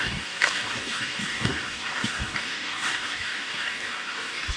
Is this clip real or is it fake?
fake